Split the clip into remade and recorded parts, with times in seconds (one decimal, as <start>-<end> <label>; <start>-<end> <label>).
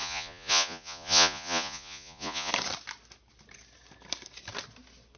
0.0-2.5 remade; 2.5-5.2 recorded